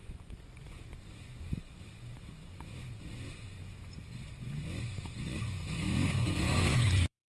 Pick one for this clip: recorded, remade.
remade